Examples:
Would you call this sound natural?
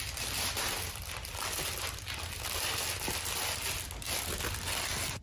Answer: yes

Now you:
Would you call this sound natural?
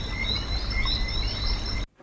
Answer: yes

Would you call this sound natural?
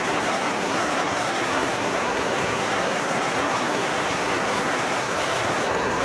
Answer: no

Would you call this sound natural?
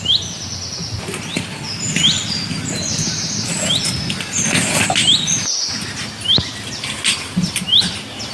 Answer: yes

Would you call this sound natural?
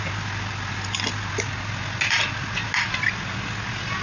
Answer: yes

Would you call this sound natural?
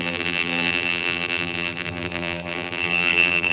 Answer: no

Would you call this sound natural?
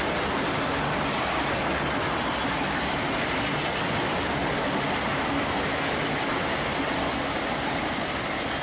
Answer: yes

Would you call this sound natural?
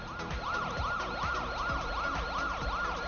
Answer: yes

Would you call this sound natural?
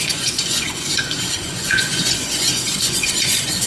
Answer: no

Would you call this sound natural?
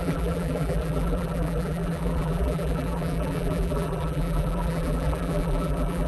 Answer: no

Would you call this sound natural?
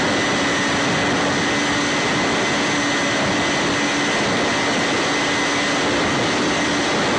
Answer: yes